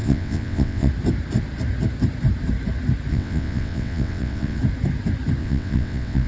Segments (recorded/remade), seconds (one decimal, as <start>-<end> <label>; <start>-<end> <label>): 0.0-0.9 remade; 0.9-3.1 recorded; 3.1-4.6 remade; 4.6-5.4 recorded; 5.4-6.3 remade